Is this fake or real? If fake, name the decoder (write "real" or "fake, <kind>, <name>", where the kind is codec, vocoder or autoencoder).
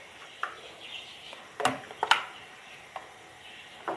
real